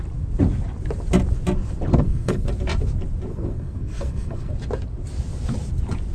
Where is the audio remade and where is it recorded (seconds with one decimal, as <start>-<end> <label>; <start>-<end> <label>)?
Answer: 0.0-1.9 recorded; 1.9-2.5 remade; 2.5-3.3 recorded; 3.3-4.5 remade; 4.5-6.1 recorded